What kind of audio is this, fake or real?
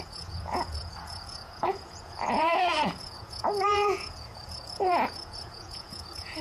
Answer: fake